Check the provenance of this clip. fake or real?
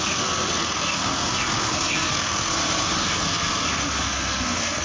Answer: fake